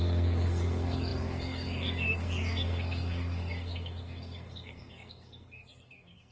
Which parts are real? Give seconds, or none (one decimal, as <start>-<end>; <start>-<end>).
none